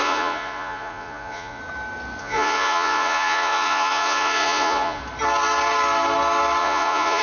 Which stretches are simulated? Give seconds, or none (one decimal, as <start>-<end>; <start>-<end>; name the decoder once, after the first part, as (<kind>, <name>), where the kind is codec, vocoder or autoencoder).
0.0-1.6 (vocoder, Vocos); 2.2-5.0; 6.6-7.2